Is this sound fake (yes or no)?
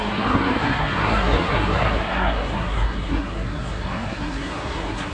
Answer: yes